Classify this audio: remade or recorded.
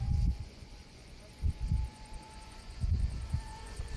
remade